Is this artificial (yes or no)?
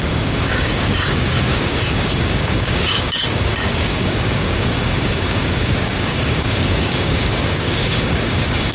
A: yes